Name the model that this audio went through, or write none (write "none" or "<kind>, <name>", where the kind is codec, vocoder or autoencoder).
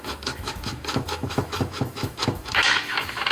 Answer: autoencoder, DAC-VAE